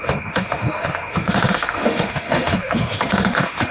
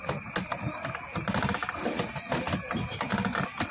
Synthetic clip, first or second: first